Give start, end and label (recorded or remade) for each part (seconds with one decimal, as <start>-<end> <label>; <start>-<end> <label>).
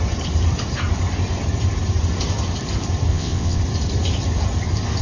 0.0-3.1 recorded; 3.1-3.6 remade; 3.6-5.0 recorded